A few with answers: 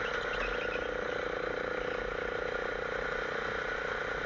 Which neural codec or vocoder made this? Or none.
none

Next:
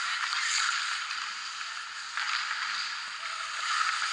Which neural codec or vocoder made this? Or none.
vocoder, BigVGAN v2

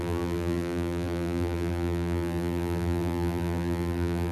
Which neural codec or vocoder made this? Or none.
vocoder, BigVGAN v2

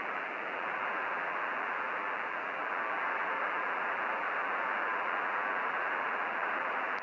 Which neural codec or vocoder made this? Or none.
vocoder, BigVGAN v2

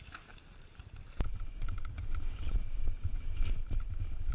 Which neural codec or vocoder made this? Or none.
vocoder, BigVGAN v2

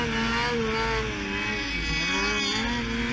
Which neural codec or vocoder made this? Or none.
none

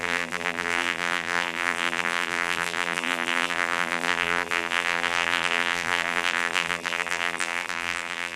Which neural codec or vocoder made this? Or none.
vocoder, BigVGAN v2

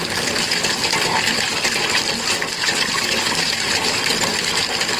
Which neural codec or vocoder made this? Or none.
none